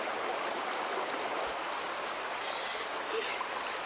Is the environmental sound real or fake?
real